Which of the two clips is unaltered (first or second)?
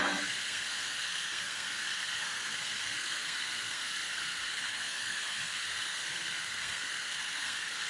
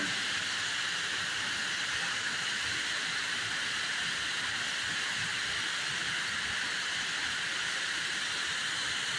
second